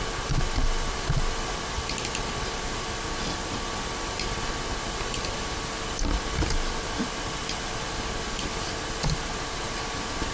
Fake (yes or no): no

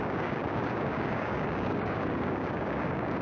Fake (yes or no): yes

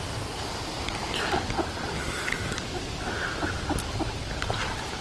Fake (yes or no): no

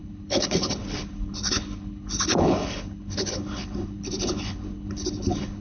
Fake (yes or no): yes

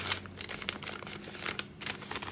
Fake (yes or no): no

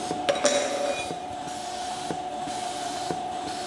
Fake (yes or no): no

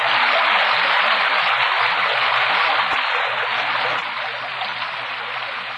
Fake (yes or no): no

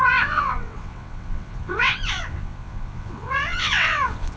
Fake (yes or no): yes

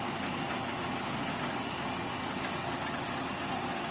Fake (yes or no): no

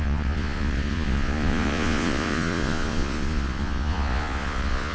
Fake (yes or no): yes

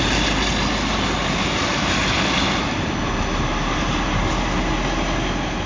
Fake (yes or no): no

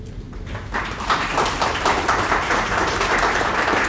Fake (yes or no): yes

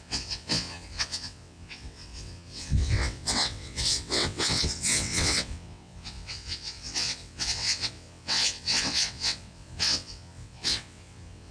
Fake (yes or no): yes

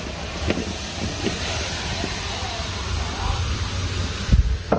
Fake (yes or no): no